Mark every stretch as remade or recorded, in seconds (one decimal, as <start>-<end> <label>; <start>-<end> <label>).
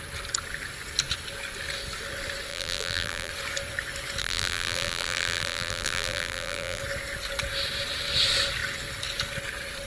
0.0-2.5 recorded; 2.5-3.3 remade; 3.3-4.2 recorded; 4.2-6.8 remade; 6.8-9.9 recorded